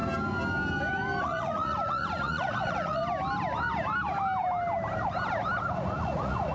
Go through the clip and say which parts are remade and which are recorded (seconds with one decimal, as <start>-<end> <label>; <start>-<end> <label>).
0.0-1.2 recorded; 1.2-3.0 remade; 3.0-6.0 recorded; 6.0-6.5 remade